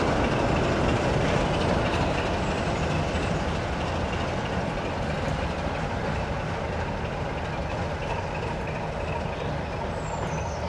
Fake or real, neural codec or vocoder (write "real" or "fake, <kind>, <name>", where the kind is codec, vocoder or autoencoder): real